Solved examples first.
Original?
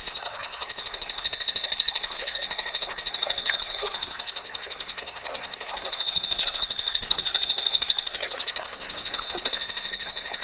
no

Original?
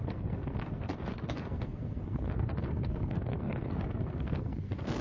no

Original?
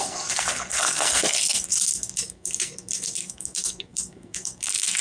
no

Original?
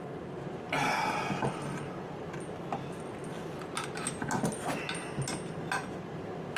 yes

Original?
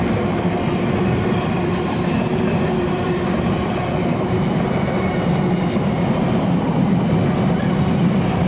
yes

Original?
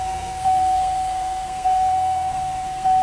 no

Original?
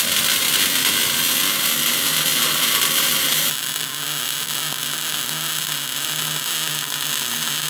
yes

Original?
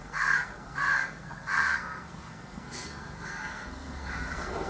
no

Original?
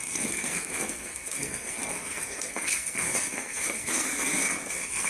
no